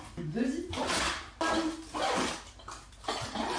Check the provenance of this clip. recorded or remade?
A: recorded